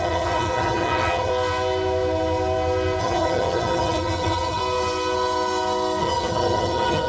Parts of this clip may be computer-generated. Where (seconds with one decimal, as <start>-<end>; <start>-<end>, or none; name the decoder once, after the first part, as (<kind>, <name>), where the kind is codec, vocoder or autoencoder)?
0.0-1.3 (vocoder, HiFi-GAN); 3.0-4.6; 6.0-7.1